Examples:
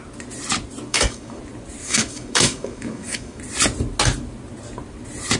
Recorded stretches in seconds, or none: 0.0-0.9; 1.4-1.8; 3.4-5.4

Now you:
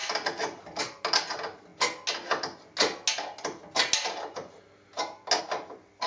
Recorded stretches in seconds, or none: 0.0-6.1

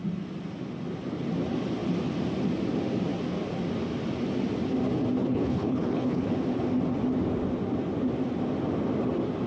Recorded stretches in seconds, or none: 0.0-5.2; 6.3-9.5

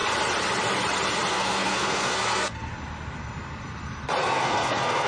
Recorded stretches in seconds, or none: 0.0-1.3; 2.7-4.2

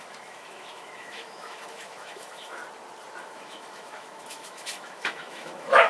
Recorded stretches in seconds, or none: 2.6-3.2

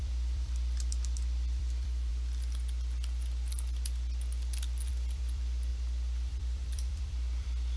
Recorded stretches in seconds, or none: 2.1-4.9

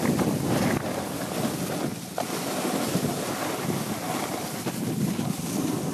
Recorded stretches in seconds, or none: 0.0-5.9